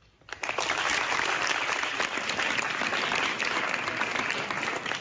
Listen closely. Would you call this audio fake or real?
real